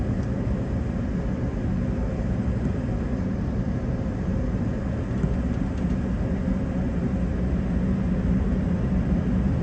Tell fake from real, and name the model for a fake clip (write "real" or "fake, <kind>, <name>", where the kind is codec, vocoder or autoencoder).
real